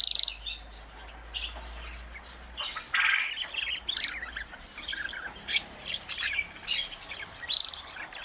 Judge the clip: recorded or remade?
recorded